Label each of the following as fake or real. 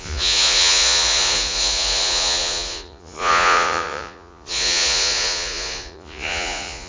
fake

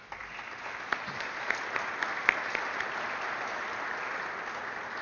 real